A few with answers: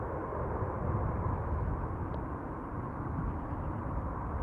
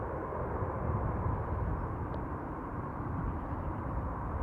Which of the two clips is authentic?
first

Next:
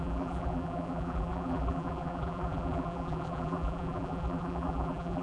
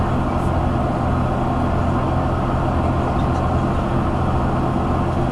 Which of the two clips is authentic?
second